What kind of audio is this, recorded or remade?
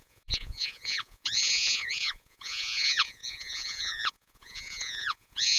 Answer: remade